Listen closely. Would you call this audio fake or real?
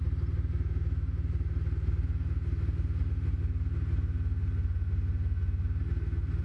real